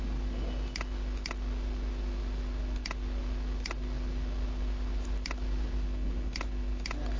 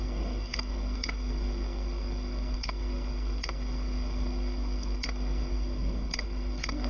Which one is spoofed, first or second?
second